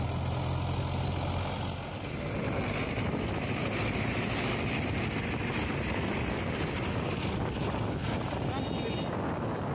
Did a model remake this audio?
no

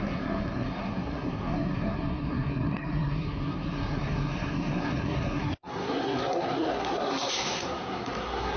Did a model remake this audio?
yes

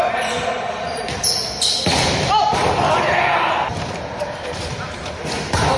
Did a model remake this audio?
no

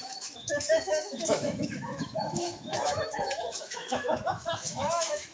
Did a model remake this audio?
yes